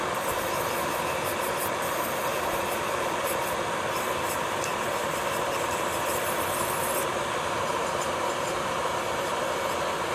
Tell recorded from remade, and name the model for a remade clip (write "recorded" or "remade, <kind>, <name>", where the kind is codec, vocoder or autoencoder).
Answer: remade, vocoder, BigVGAN v2